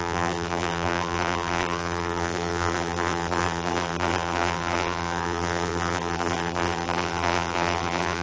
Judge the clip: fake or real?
fake